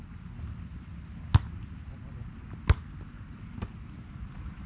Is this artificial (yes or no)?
no